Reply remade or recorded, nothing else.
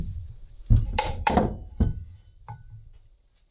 remade